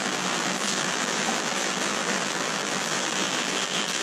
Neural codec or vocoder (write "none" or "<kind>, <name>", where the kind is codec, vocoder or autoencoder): vocoder, BigVGAN v2